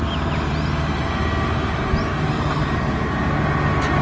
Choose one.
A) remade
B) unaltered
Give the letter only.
B